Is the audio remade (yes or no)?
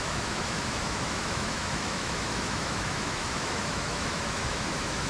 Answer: yes